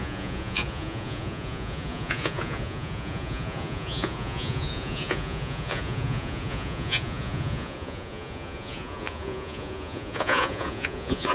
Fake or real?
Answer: fake